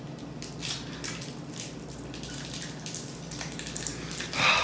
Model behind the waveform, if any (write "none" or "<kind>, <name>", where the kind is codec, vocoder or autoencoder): none